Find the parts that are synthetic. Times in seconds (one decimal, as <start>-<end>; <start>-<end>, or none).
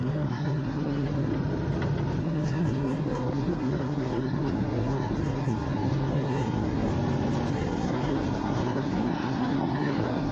0.0-1.3; 2.2-6.9; 7.5-10.3